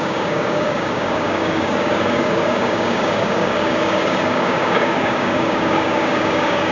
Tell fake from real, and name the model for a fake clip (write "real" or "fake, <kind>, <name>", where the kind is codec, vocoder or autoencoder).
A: fake, codec, DAC